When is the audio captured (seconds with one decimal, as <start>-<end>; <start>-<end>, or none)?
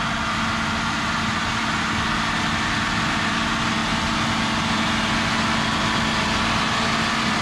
0.0-7.4